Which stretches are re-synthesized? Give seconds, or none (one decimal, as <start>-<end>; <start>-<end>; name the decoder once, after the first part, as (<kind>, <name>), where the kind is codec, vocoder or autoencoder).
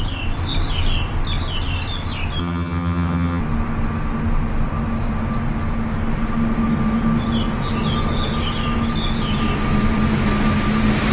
2.4-3.4 (vocoder, HiFi-GAN)